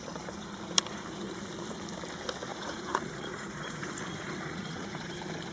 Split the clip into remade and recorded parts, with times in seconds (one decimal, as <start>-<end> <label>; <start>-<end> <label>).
0.0-2.5 recorded; 2.5-5.1 remade; 5.1-5.5 recorded